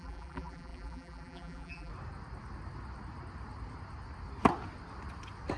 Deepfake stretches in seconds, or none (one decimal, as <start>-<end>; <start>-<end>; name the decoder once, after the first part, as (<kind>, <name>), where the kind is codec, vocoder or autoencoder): 0.0-1.9 (vocoder, BigVGAN v2)